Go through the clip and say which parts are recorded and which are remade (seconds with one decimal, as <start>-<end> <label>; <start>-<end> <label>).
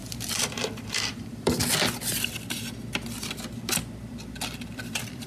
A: 0.0-1.6 remade; 1.6-4.8 recorded; 4.8-5.3 remade